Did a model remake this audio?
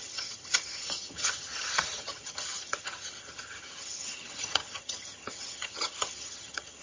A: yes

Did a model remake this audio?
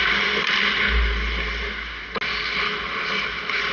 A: no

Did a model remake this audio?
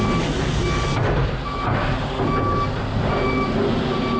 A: no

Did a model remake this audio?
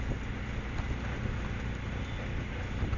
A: no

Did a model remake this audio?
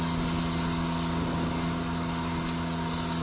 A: no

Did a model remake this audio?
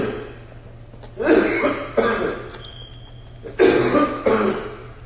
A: no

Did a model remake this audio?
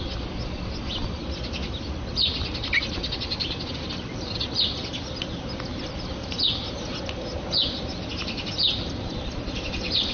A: no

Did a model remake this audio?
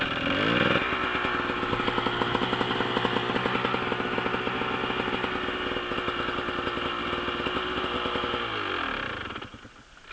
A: no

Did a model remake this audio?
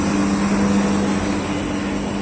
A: no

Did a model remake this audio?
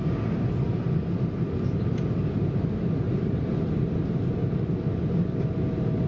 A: no